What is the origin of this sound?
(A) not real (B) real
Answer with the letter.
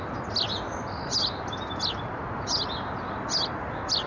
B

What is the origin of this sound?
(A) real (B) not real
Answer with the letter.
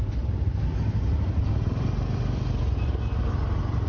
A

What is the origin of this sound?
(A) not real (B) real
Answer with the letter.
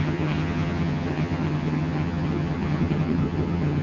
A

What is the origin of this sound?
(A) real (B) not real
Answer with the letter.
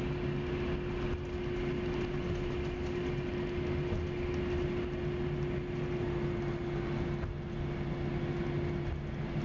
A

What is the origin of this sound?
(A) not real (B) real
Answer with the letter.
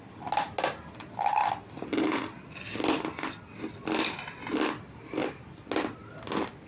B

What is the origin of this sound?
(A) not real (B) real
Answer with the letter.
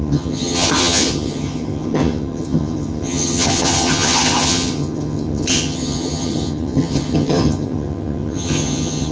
A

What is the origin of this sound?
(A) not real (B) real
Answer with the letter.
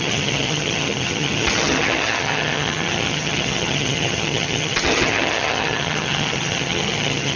A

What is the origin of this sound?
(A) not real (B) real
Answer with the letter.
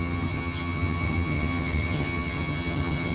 A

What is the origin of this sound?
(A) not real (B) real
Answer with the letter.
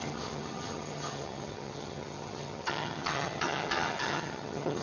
A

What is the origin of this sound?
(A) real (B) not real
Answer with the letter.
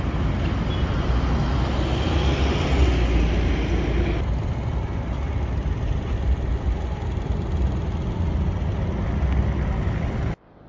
A